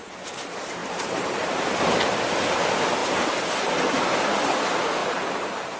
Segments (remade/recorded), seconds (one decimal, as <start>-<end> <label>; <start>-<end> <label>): 0.0-0.8 recorded; 0.8-2.0 remade; 2.0-5.0 recorded; 5.0-5.8 remade